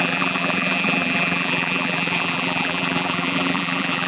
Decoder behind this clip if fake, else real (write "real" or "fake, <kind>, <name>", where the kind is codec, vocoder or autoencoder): fake, vocoder, BigVGAN v2